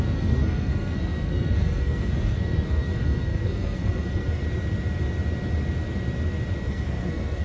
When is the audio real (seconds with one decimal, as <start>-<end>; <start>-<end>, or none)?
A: 4.4-6.7